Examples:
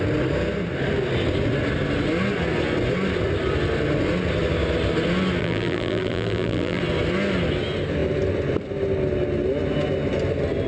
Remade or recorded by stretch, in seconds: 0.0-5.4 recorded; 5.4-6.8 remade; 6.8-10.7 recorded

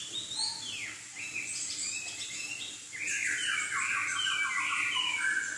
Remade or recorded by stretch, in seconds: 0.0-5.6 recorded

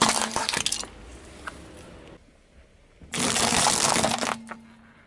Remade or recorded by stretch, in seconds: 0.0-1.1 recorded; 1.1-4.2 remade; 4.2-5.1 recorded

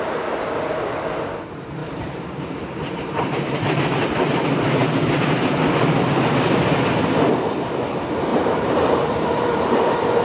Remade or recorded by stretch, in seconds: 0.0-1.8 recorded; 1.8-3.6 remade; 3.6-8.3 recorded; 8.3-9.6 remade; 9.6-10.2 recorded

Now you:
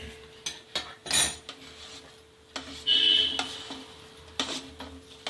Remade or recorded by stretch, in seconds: 0.0-5.3 recorded

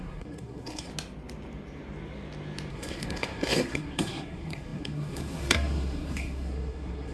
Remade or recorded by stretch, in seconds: 0.0-0.9 remade; 0.9-2.7 recorded; 2.7-7.1 remade

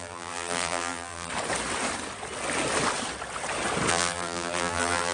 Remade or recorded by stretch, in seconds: 0.0-1.3 remade; 1.3-3.9 recorded; 3.9-5.1 remade

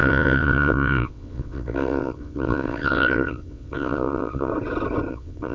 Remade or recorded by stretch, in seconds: 0.0-4.5 remade; 4.5-5.1 recorded; 5.1-5.5 remade